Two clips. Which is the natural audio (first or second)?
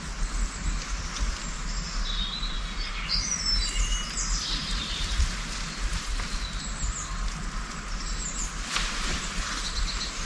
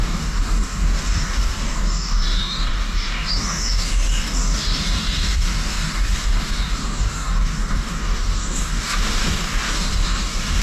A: first